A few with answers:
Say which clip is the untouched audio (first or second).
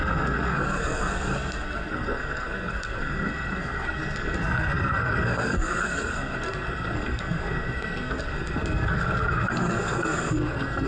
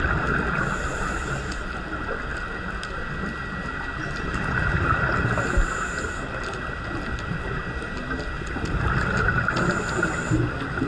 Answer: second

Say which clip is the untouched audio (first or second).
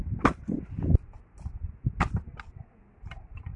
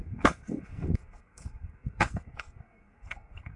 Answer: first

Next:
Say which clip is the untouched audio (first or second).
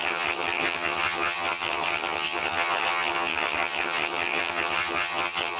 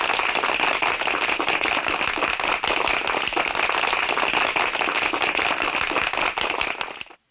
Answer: second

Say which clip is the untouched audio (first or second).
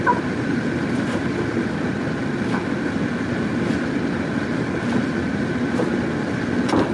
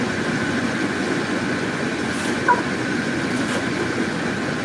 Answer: first